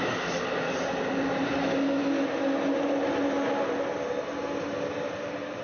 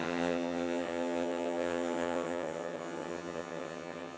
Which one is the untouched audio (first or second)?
first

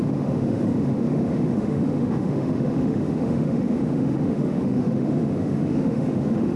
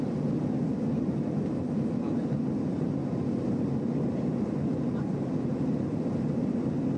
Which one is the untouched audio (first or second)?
second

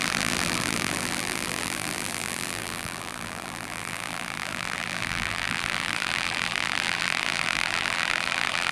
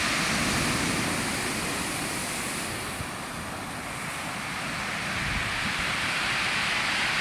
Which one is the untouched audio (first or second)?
second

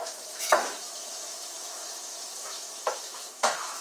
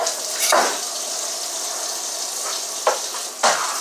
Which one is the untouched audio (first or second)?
second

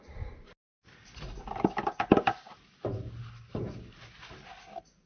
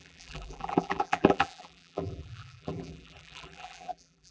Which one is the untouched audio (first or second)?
first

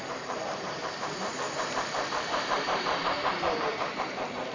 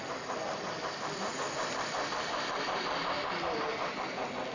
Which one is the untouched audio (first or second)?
second